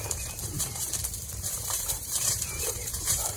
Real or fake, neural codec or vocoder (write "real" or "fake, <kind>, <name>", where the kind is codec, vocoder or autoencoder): fake, vocoder, BigVGAN v2